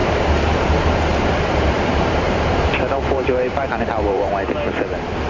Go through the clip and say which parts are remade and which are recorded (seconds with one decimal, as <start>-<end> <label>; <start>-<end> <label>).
0.0-0.7 remade; 0.7-1.1 recorded; 1.1-4.3 remade; 4.3-5.3 recorded